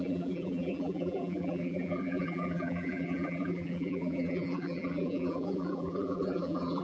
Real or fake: fake